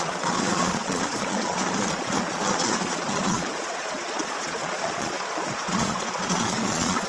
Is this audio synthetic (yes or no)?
yes